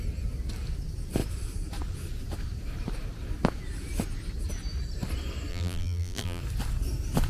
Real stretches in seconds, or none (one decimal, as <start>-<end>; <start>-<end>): 0.0-5.5; 6.4-7.3